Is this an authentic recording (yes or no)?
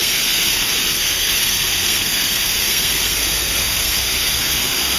no